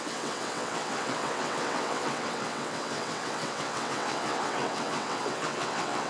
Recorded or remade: remade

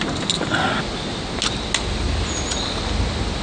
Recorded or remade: recorded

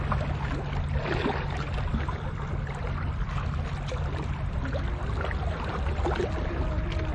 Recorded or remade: recorded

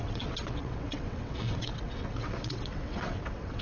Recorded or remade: remade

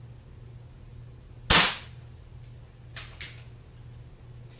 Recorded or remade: recorded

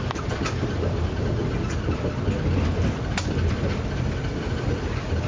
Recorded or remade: recorded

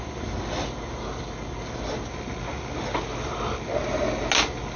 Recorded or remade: recorded